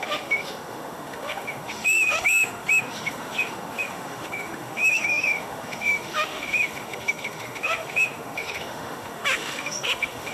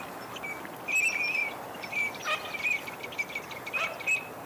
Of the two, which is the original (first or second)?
second